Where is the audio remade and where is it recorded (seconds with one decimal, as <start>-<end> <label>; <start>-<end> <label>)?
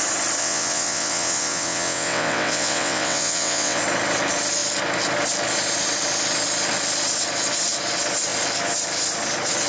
0.0-0.4 recorded; 0.4-3.8 remade; 3.8-9.7 recorded